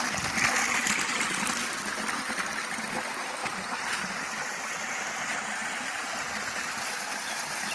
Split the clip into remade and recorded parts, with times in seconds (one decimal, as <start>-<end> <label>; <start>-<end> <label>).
0.0-3.4 recorded; 3.4-4.1 remade; 4.1-5.6 recorded; 5.6-7.7 remade